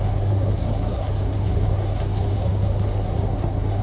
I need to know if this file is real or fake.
fake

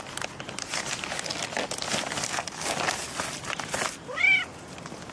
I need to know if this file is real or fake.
real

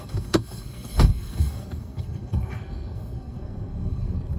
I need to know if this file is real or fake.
fake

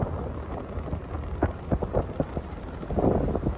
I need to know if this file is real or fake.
real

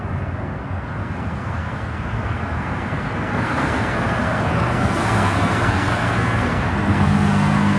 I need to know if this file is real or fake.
fake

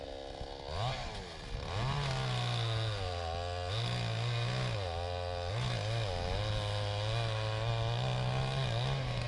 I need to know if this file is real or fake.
real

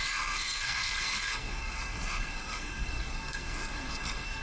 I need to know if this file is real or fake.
fake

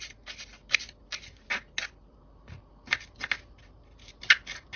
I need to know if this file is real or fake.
real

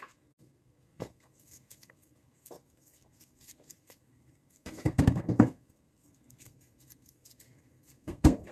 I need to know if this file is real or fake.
fake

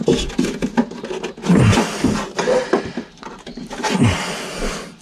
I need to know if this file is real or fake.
real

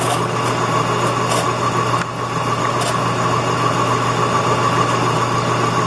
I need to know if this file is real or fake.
real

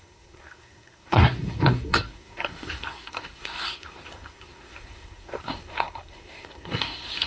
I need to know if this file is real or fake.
fake